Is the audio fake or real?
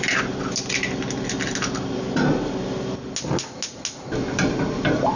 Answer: real